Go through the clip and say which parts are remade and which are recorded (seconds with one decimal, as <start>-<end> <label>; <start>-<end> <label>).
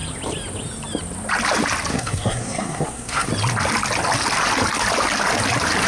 0.0-1.9 recorded; 1.9-3.3 remade; 3.3-5.9 recorded